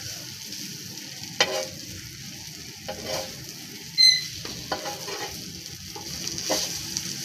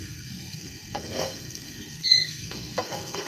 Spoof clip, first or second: second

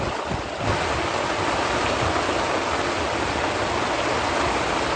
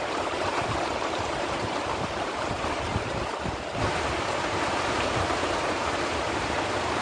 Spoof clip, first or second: second